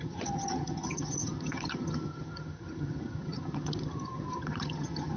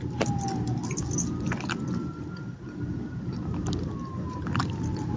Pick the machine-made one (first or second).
first